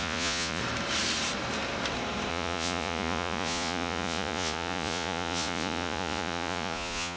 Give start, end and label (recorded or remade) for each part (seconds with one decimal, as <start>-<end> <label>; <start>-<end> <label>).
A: 0.0-0.6 remade; 0.6-2.3 recorded; 2.3-7.2 remade